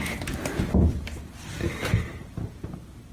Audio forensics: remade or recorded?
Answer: recorded